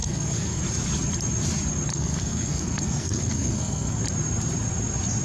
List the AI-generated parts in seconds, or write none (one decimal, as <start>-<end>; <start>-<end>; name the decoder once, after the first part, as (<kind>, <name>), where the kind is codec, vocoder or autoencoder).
0.0-0.6 (codec, SNAC); 1.9-4.0